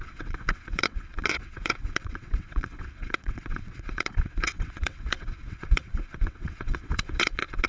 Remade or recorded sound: remade